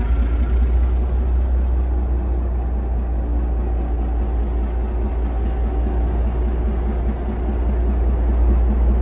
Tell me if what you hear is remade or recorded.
recorded